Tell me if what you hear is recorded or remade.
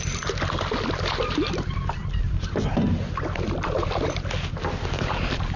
recorded